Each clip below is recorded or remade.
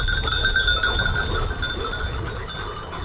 recorded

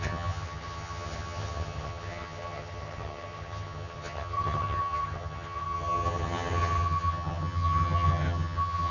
remade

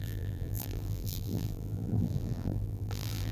remade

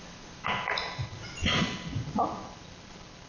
recorded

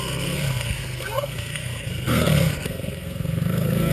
remade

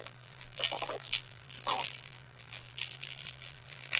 remade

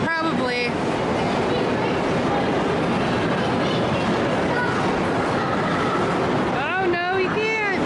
recorded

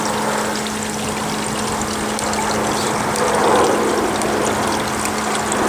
recorded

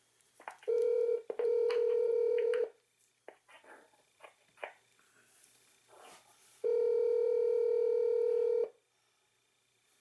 remade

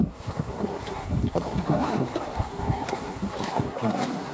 remade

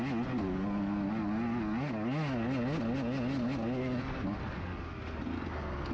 recorded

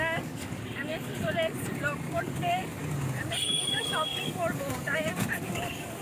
remade